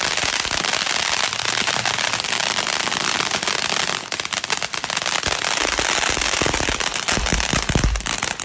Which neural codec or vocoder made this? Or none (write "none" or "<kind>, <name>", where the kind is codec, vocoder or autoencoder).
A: none